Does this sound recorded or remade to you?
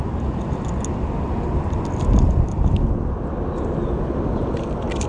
recorded